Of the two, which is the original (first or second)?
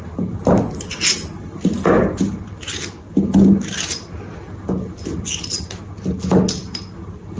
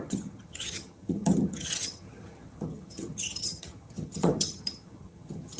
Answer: first